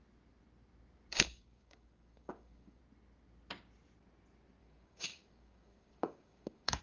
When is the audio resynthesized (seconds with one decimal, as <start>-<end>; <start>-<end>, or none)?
1.1-2.8; 4.6-6.8